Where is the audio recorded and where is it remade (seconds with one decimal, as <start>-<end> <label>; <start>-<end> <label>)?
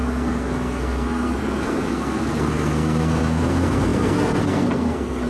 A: 0.0-5.3 remade